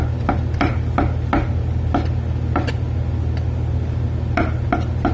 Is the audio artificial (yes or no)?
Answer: no